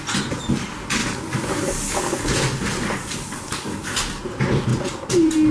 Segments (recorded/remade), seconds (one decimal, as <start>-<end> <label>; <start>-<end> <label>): 0.0-1.0 recorded; 1.0-2.3 remade; 2.3-3.0 recorded; 3.0-4.2 remade; 4.2-5.5 recorded